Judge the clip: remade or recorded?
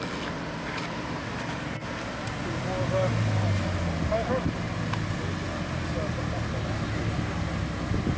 recorded